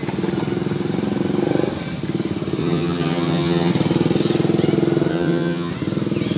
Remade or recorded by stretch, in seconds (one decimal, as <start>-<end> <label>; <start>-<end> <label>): 0.0-2.6 recorded; 2.6-3.7 remade; 3.7-5.1 recorded; 5.1-5.7 remade; 5.7-6.4 recorded